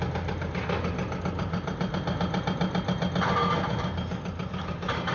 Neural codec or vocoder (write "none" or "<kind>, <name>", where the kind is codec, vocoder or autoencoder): none